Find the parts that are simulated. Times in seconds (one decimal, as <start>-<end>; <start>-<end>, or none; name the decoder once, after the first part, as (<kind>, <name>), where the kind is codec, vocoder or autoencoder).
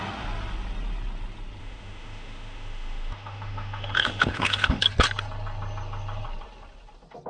1.6-4.8 (autoencoder, DAC-VAE)